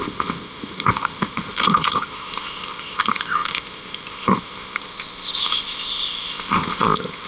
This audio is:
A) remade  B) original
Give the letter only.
A